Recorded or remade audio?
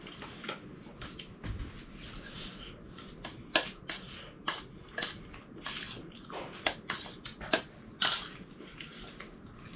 recorded